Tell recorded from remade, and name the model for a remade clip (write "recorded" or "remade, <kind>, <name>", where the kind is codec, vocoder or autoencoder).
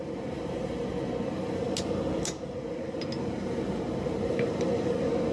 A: recorded